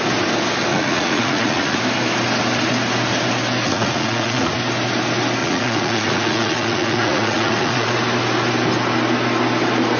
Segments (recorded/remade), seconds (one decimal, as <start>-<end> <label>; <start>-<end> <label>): 0.0-0.7 recorded; 0.7-1.8 remade; 1.8-3.7 recorded; 3.7-4.5 remade; 4.5-5.4 recorded; 5.4-7.9 remade; 7.9-10.0 recorded